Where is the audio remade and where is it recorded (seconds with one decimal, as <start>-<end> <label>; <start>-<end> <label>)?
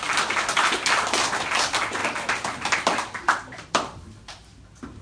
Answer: 0.0-5.0 recorded